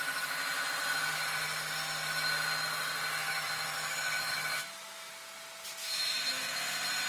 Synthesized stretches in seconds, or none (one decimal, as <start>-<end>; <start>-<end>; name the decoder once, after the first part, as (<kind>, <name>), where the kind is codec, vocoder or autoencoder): 3.2-5.1 (autoencoder, DAC-VAE); 5.8-6.6